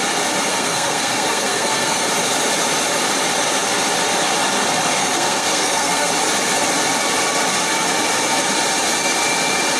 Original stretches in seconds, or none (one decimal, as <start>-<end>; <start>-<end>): 0.0-0.5; 2.1-5.0; 6.1-9.8